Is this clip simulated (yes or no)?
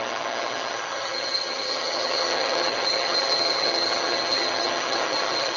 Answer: yes